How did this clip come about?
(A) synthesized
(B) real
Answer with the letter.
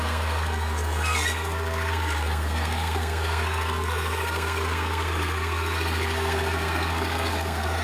A